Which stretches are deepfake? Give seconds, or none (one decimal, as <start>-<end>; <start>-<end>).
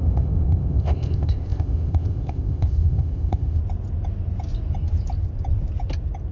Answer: 0.0-3.6